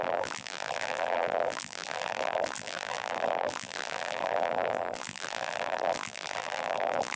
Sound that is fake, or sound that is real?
fake